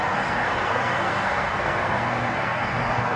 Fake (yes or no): yes